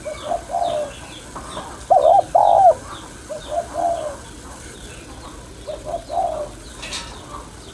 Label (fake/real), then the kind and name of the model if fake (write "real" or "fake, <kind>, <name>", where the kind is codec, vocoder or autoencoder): real